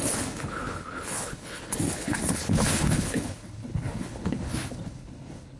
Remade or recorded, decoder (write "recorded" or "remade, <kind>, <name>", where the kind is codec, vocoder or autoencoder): remade, codec, HILCodec